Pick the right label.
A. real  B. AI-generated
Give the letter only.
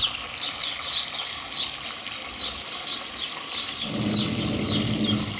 A